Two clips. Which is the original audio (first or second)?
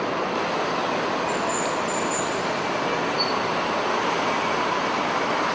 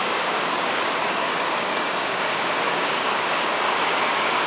first